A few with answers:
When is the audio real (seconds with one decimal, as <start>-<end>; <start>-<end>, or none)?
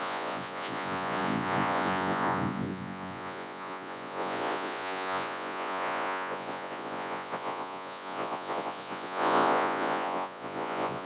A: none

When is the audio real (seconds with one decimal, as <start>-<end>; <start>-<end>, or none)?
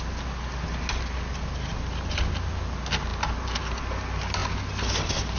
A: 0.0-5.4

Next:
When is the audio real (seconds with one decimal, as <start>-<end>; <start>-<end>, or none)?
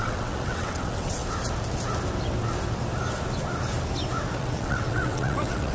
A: 1.2-4.4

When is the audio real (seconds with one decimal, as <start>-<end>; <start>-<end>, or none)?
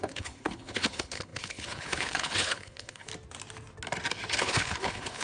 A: 3.1-4.4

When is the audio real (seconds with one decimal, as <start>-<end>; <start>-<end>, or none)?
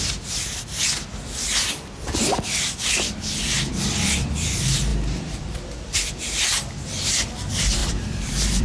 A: none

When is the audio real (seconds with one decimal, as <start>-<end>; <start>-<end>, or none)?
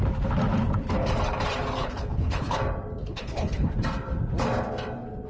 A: 0.0-1.8; 2.6-3.0; 3.7-5.3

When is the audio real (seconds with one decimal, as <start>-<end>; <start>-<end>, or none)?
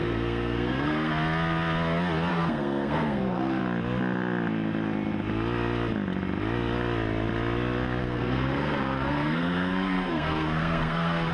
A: 1.1-2.3; 3.6-8.0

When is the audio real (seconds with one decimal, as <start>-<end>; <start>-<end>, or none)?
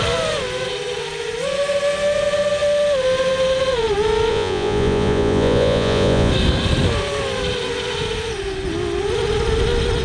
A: 0.0-4.3; 6.3-10.0